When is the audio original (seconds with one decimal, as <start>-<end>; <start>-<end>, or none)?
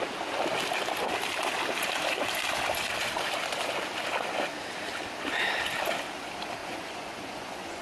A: 0.0-6.6